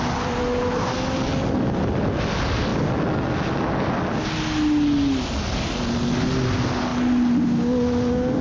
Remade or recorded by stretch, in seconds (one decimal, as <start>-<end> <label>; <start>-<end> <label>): 0.0-8.4 recorded